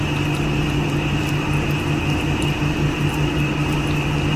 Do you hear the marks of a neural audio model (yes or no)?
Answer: no